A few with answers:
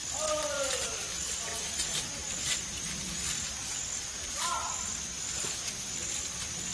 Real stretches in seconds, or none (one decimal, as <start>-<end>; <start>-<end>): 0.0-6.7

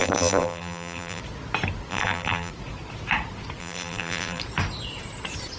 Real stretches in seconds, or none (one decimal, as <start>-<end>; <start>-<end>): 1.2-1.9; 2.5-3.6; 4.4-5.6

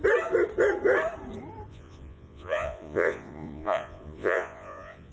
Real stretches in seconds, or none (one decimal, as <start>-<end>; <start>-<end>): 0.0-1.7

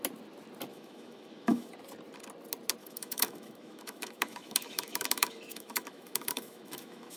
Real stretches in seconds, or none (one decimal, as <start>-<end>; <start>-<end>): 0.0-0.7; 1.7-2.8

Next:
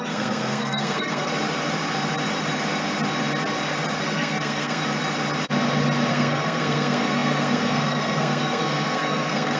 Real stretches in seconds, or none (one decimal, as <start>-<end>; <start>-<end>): 1.3-4.0; 4.8-6.1

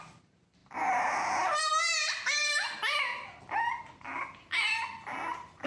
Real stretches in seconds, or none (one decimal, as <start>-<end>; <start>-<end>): 0.0-5.7